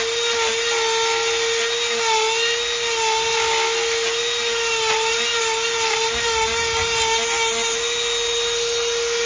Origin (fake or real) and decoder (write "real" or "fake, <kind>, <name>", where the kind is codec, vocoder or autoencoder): real